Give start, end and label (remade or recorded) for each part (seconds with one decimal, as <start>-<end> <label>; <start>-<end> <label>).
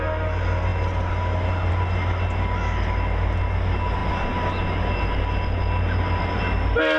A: 0.0-7.0 recorded